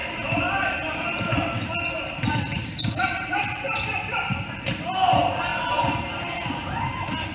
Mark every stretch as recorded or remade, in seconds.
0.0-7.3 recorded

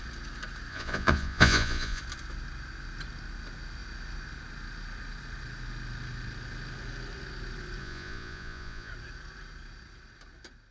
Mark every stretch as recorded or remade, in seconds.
0.0-0.7 recorded; 0.7-2.0 remade; 2.0-7.8 recorded; 7.8-8.9 remade; 8.9-10.7 recorded

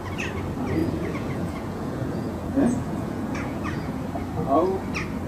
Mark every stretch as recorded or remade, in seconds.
0.0-0.8 recorded; 0.8-4.0 remade; 4.0-5.3 recorded

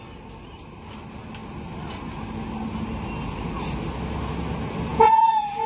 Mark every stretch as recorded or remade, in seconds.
0.0-4.9 recorded; 4.9-5.7 remade